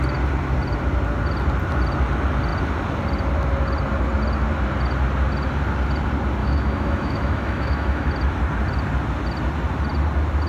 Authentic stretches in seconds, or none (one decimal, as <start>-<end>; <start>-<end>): 0.0-6.4; 8.1-10.5